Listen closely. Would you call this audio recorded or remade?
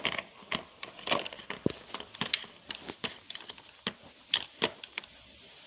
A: recorded